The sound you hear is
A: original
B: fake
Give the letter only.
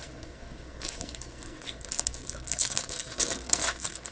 B